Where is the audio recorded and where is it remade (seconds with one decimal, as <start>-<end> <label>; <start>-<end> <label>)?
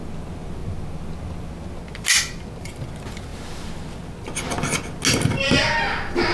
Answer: 0.0-6.3 recorded